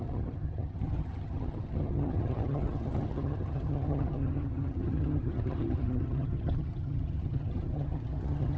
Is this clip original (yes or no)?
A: no